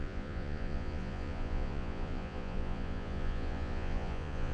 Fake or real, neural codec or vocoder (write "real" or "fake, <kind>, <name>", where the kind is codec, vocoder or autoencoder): fake, vocoder, Vocos